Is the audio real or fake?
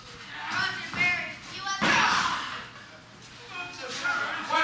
real